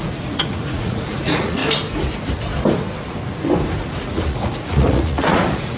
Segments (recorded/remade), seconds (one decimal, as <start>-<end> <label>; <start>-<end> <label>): 0.0-1.6 remade; 1.6-4.0 recorded; 4.0-5.8 remade